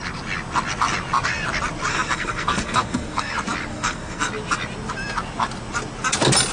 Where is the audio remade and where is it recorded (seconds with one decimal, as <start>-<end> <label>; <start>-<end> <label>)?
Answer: 0.0-1.9 recorded; 1.9-3.3 remade; 3.3-3.7 recorded; 3.7-4.3 remade; 4.3-6.5 recorded